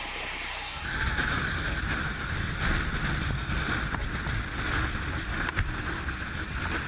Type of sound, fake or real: real